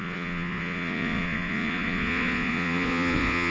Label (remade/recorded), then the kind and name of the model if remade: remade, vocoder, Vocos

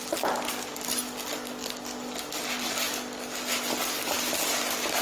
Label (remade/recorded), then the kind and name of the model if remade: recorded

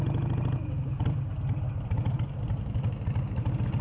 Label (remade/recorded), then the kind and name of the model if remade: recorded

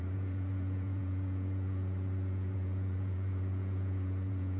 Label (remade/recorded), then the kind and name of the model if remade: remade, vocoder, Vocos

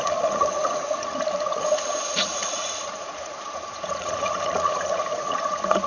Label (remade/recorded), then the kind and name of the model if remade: remade, vocoder, Vocos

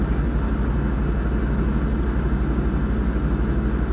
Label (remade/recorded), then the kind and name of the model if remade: recorded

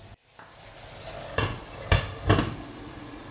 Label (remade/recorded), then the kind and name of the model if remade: recorded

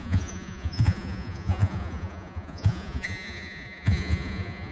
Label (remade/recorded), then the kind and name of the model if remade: remade, vocoder, Vocos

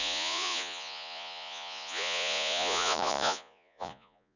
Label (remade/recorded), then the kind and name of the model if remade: remade, vocoder, Vocos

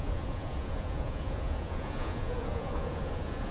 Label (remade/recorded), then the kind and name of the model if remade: remade, vocoder, Vocos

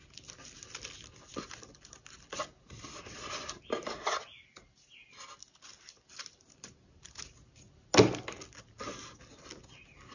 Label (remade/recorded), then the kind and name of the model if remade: recorded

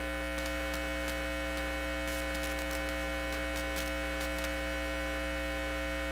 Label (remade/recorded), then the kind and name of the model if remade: recorded